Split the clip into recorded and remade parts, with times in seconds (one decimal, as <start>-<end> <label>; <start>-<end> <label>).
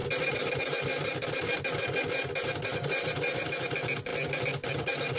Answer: 0.0-5.2 recorded